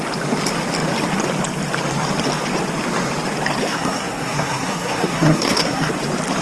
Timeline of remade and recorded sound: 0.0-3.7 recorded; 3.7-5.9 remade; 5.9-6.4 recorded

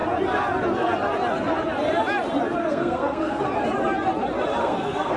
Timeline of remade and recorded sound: 0.0-2.6 recorded; 2.6-3.4 remade; 3.4-4.6 recorded; 4.6-5.2 remade

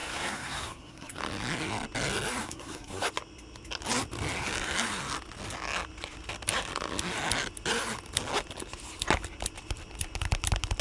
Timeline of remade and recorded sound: 0.0-1.2 remade; 1.2-2.4 recorded; 2.4-3.1 remade; 3.1-10.8 recorded

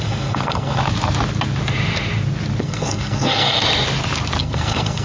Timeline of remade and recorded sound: 0.0-0.8 remade; 0.8-2.6 recorded; 2.6-3.6 remade; 3.6-4.4 recorded; 4.4-5.0 remade

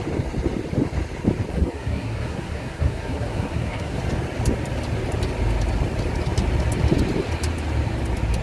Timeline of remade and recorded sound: 0.0-1.5 recorded; 1.5-4.0 remade; 4.0-8.4 recorded

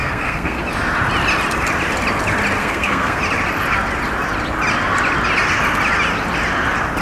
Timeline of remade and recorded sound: 0.0-0.6 remade; 0.6-2.6 recorded; 2.6-3.2 remade; 3.2-7.0 recorded

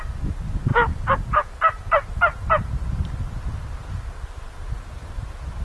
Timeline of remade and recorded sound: 0.0-5.6 recorded

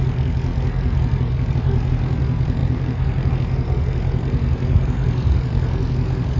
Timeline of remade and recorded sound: 0.0-6.4 remade